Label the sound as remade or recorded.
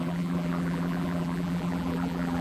remade